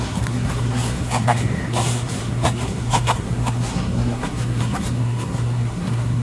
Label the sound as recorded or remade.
remade